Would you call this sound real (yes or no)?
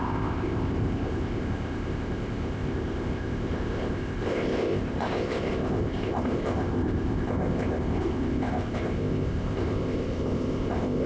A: no